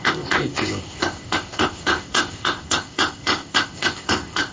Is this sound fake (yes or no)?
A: yes